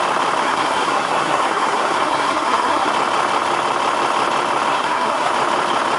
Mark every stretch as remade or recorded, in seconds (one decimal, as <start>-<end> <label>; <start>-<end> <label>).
0.0-0.4 recorded; 0.4-2.9 remade; 2.9-4.7 recorded; 4.7-5.3 remade; 5.3-6.0 recorded